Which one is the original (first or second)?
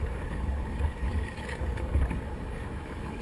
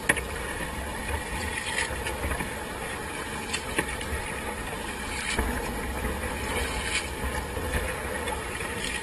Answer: second